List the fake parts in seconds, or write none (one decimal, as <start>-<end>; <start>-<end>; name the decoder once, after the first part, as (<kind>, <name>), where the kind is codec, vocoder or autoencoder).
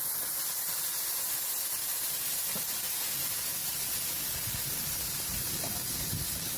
none